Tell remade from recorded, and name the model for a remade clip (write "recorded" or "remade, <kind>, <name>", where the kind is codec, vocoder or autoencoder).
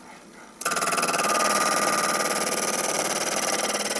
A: recorded